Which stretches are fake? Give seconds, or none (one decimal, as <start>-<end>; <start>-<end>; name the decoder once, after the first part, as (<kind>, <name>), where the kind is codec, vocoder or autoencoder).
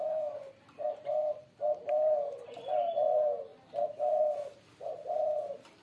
none